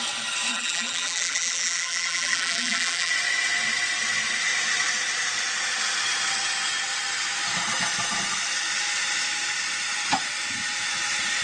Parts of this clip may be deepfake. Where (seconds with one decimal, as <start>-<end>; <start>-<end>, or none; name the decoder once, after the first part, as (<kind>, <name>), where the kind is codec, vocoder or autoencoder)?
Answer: 0.5-3.1 (vocoder, BigVGAN v2)